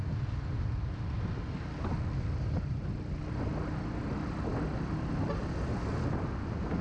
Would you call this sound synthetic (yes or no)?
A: no